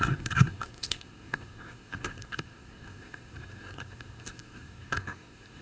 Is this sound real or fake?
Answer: fake